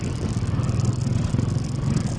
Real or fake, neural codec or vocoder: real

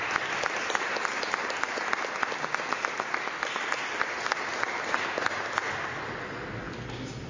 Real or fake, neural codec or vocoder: real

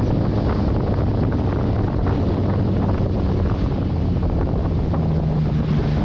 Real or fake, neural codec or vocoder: real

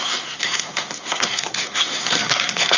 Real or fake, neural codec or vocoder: fake, codec, SNAC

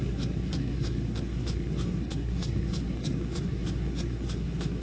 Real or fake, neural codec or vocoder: fake, codec, SNAC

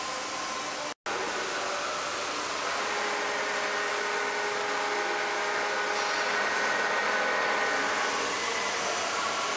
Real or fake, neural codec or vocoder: real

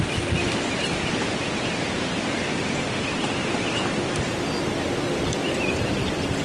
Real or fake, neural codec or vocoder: real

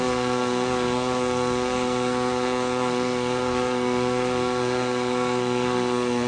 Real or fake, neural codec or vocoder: fake, codec, SNAC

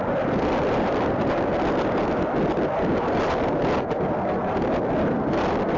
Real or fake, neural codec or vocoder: real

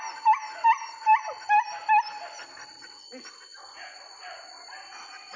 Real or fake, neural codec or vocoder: real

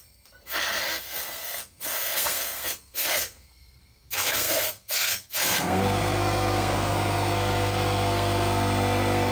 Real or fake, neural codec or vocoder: fake, codec, SNAC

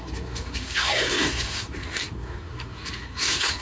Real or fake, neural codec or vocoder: fake, codec, SNAC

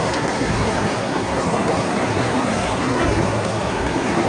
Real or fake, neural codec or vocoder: fake, codec, SNAC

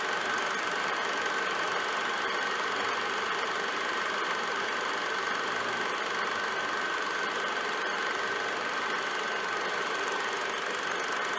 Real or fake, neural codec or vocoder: real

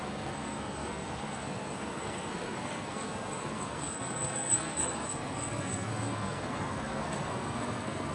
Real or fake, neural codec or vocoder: fake, codec, SNAC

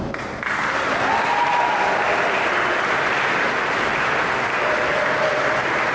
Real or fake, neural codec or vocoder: real